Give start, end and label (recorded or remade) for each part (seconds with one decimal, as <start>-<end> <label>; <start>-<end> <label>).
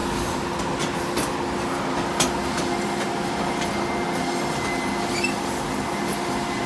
0.0-6.7 recorded